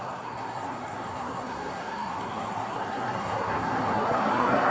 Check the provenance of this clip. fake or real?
fake